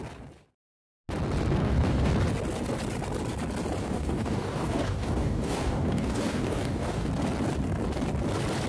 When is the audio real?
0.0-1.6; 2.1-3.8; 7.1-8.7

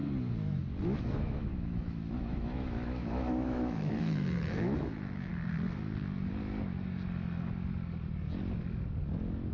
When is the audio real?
0.0-1.0; 5.3-9.5

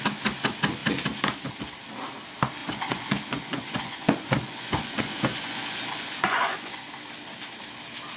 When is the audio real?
0.0-2.6; 6.9-8.2

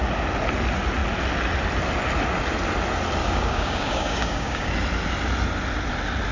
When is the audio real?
0.0-3.2; 4.7-6.3

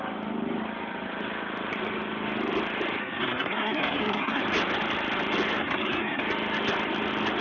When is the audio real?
0.0-3.0; 4.4-5.6; 6.2-7.4

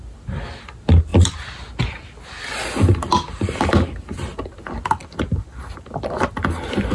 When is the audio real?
0.0-5.0; 5.6-6.9

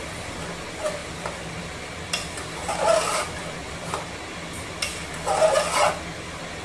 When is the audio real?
0.0-6.6